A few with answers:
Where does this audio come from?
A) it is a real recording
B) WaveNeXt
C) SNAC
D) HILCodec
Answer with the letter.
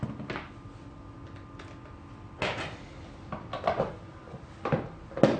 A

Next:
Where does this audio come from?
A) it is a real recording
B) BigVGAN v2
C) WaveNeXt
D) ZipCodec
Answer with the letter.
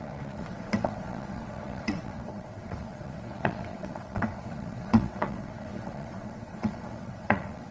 C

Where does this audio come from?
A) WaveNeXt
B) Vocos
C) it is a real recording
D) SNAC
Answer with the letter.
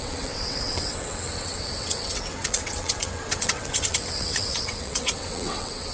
A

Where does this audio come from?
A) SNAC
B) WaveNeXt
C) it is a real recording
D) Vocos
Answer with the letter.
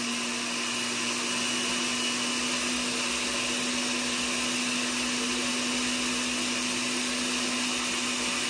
C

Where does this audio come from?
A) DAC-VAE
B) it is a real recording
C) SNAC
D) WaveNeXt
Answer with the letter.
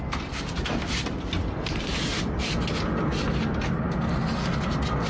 B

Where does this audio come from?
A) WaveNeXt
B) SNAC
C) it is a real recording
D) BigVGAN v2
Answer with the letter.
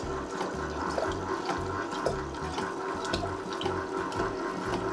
C